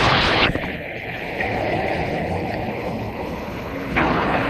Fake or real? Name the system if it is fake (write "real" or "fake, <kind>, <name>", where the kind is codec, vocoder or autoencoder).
fake, codec, HILCodec